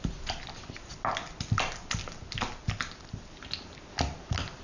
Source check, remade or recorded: recorded